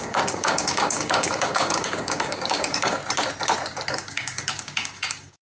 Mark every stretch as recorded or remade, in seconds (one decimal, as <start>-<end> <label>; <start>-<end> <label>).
0.0-3.0 remade; 3.0-3.9 recorded; 3.9-5.5 remade